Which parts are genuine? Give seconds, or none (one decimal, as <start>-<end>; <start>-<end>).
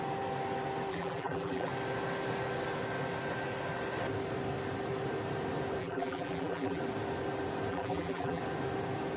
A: 0.0-0.9; 1.7-5.8; 6.8-7.7; 8.4-9.2